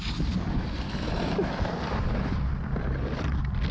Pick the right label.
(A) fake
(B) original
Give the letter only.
B